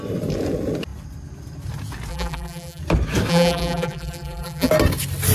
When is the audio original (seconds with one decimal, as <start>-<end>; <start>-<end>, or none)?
0.0-2.1; 2.8-3.3; 4.7-5.3